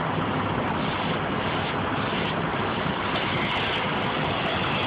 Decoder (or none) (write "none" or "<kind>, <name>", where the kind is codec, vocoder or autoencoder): none